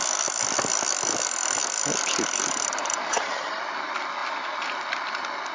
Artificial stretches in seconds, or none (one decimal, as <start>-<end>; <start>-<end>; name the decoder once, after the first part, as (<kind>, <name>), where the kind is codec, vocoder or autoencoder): 3.1-3.6 (vocoder, HiFi-GAN)